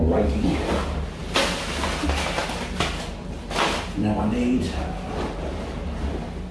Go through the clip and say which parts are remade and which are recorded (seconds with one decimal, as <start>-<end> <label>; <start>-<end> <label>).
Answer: 0.0-6.5 recorded